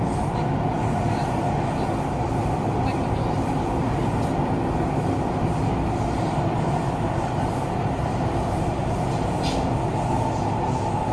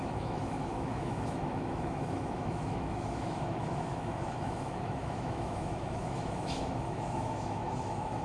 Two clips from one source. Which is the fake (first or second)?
second